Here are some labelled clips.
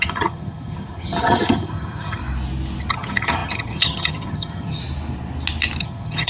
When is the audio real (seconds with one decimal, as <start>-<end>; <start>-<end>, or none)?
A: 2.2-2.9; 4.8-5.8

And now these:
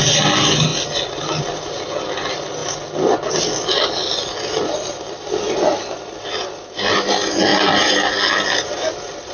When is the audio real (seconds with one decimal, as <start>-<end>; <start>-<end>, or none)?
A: 0.0-9.3

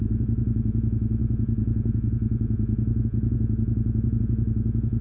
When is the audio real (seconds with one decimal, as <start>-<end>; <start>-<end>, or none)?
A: none

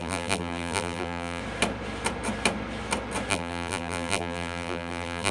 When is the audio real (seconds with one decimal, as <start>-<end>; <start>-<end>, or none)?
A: 1.4-3.3

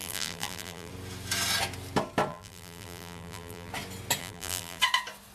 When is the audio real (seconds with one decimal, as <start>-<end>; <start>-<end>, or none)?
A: 0.9-2.3; 3.7-4.2; 4.8-5.3

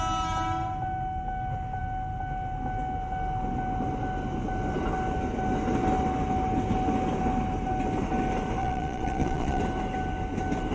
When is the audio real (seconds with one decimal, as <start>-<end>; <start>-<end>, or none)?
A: 0.0-8.6; 9.6-10.7

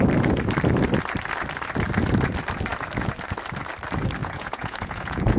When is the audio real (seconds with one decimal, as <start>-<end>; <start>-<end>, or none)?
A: 0.0-4.2

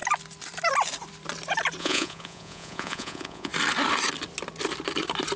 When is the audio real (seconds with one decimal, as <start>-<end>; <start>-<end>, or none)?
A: 0.0-1.8; 3.5-5.4